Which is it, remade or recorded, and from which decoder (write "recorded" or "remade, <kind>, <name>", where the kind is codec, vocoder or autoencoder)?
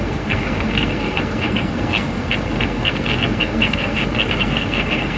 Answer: remade, codec, SNAC